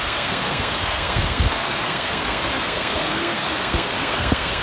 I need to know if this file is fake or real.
fake